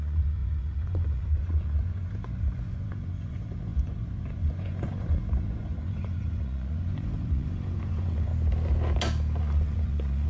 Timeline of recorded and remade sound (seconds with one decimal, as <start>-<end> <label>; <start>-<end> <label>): 0.0-8.3 remade; 8.3-9.4 recorded; 9.4-10.3 remade